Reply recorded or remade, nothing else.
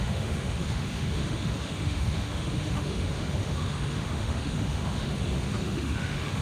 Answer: remade